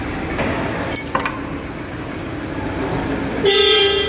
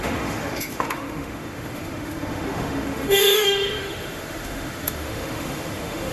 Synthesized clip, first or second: second